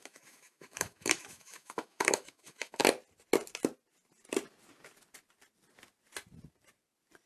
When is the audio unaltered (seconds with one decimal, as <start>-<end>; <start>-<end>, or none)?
2.8-7.3